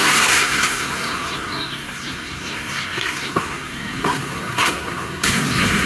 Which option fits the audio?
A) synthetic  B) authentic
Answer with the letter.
A